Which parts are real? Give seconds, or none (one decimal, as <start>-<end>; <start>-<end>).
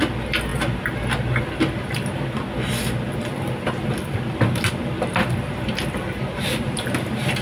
0.0-7.4